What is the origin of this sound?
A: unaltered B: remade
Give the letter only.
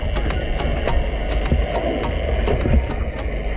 A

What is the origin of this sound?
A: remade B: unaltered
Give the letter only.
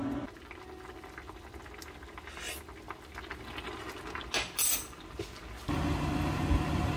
B